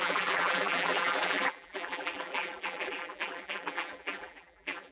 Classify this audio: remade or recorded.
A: remade